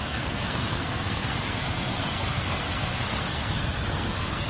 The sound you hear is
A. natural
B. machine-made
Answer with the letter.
B